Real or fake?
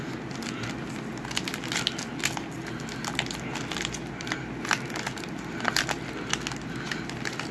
real